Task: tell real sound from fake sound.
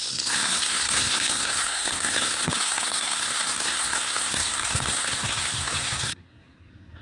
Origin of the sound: fake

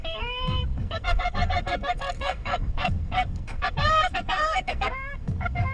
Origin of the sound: fake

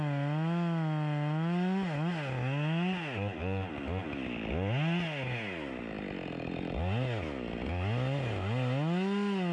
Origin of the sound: real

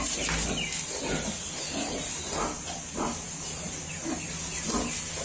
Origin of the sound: real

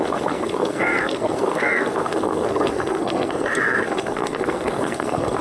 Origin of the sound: fake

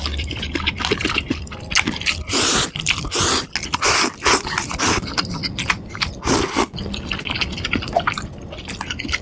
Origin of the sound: real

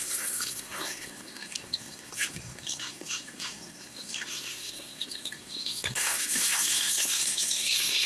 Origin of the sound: fake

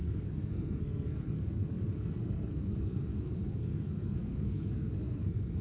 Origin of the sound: fake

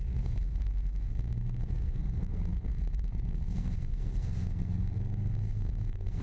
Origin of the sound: fake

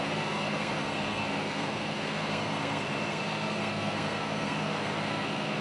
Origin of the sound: fake